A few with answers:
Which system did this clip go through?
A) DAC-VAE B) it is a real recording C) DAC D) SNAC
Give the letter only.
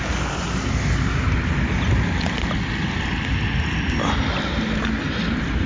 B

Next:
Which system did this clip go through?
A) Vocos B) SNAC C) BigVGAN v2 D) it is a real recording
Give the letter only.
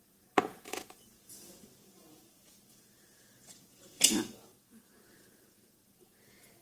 A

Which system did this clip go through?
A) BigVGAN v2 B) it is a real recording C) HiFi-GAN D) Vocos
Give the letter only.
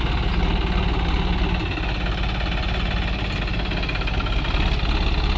B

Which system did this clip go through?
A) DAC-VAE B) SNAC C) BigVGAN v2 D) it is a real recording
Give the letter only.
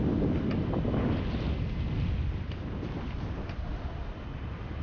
D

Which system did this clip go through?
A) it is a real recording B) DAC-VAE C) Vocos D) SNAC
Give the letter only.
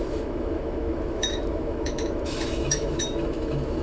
B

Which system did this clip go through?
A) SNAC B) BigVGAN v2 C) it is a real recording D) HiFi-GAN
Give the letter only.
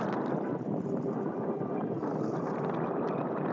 B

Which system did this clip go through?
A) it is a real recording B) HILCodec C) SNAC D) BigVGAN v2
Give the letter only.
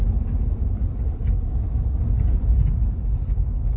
A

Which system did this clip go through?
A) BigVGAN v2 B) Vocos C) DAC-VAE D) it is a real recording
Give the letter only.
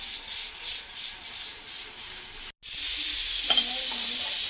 D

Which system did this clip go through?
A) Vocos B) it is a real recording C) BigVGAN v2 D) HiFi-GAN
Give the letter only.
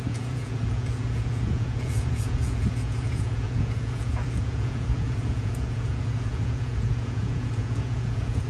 A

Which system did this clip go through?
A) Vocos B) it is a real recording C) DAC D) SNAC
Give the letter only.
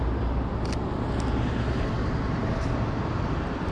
B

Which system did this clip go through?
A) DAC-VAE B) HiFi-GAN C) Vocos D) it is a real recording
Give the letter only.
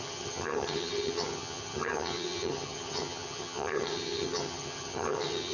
B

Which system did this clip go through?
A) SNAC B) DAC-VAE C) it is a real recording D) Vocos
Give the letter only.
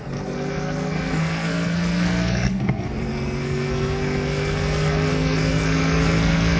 A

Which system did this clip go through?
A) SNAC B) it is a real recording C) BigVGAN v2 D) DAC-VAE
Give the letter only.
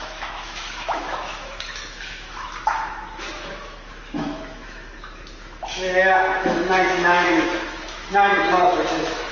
D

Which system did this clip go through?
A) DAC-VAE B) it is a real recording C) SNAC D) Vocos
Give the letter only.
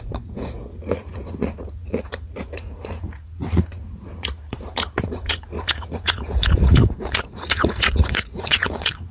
D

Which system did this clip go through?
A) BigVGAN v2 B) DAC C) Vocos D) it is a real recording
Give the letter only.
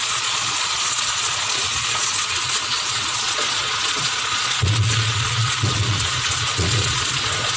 C